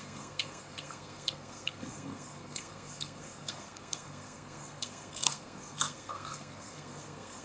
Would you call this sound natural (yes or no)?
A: no